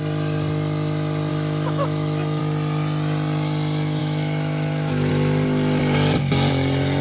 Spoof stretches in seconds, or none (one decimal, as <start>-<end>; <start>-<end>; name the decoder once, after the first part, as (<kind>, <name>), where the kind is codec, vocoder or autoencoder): 1.3-2.4 (autoencoder, DAC-VAE); 4.0-5.1